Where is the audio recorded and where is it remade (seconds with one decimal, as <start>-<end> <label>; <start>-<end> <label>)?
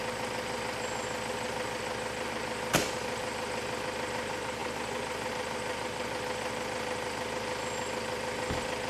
0.0-8.9 recorded